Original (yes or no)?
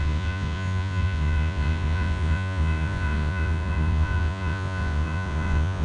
no